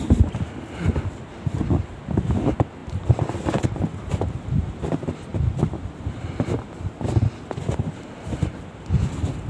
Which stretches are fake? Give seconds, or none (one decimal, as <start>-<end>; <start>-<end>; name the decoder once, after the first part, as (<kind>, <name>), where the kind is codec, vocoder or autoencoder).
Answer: 5.3-7.6 (vocoder, BigVGAN v2)